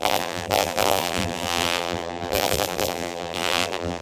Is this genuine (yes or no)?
no